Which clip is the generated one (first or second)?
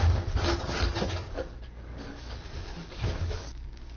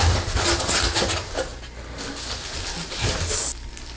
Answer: first